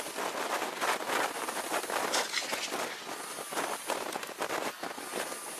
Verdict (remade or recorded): recorded